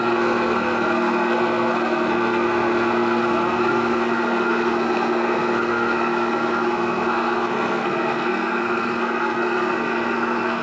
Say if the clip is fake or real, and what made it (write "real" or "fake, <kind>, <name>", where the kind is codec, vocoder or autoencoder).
fake, codec, SNAC